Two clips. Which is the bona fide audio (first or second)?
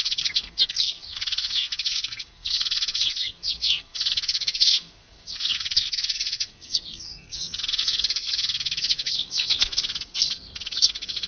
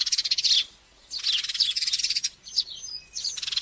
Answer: second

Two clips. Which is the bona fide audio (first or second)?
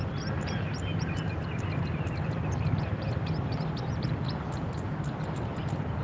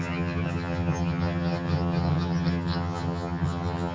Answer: first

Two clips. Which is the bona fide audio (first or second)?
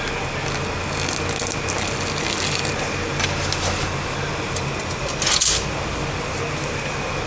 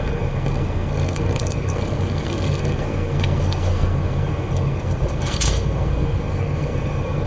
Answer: first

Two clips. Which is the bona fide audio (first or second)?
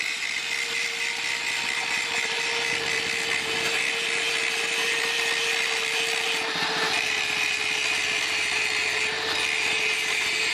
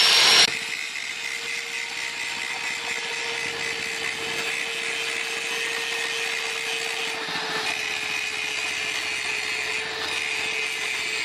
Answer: second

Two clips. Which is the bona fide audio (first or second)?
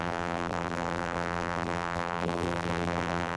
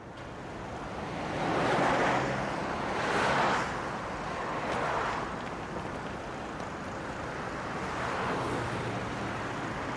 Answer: second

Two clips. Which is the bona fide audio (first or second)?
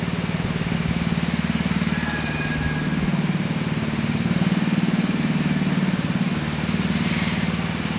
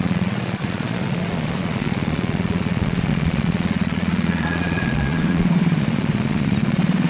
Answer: first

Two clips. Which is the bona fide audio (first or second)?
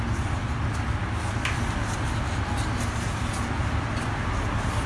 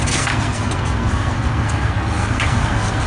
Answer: first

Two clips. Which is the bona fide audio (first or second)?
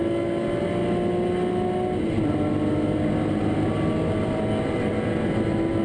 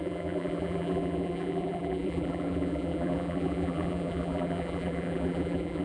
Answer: first